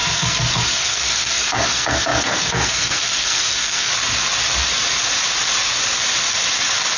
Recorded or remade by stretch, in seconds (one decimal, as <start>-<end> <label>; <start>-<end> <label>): 0.0-3.9 remade; 3.9-7.0 recorded